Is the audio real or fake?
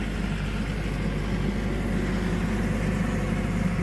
real